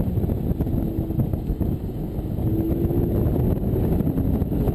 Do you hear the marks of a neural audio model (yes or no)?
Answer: no